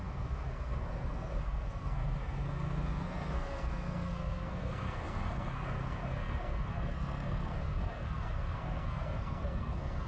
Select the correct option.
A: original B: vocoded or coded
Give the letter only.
B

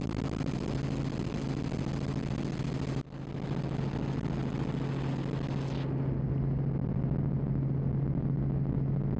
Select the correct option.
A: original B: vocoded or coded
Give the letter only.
A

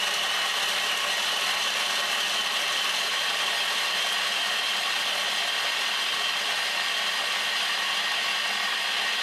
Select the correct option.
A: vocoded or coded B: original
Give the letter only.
B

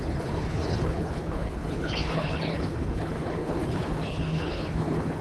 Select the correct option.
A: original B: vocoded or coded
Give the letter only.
B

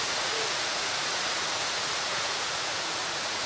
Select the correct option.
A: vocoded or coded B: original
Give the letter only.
A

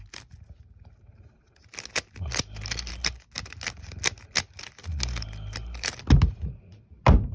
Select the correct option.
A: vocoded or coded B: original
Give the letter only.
B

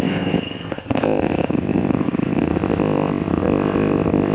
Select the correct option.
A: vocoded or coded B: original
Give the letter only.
A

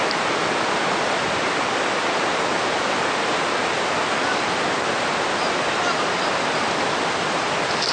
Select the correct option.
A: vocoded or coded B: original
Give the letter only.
B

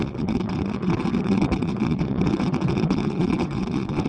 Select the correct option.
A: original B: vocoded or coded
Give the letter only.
B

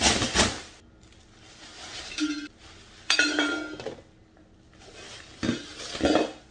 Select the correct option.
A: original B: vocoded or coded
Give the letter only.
A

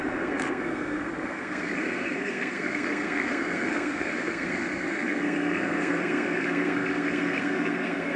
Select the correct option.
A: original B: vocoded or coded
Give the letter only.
B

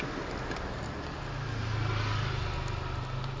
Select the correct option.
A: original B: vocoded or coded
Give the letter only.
A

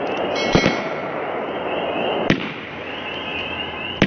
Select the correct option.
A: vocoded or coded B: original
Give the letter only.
B